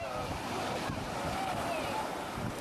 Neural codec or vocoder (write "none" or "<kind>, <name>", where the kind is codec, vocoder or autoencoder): vocoder, BigVGAN v2